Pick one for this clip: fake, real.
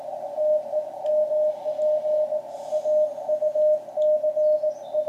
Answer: real